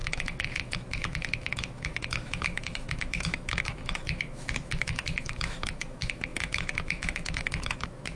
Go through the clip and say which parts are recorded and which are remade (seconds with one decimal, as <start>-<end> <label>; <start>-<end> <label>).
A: 0.0-8.2 remade